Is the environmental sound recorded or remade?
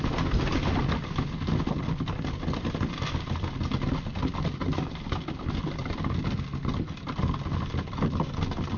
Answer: recorded